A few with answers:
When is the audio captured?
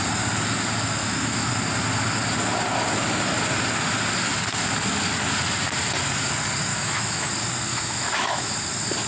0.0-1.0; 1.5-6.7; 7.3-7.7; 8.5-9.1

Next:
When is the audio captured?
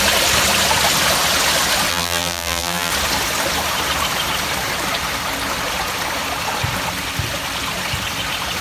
0.0-1.9; 2.9-8.6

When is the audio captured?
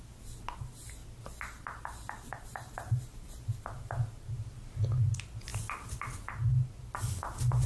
0.0-7.7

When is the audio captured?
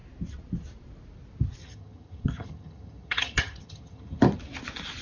0.0-1.6; 4.2-5.0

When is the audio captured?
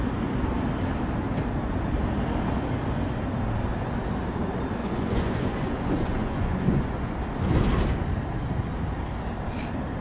0.0-4.8; 7.2-10.0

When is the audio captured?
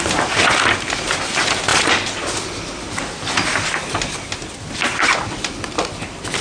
0.0-6.4